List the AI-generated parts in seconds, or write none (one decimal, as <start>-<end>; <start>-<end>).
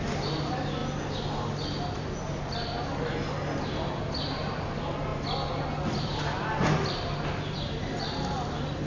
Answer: none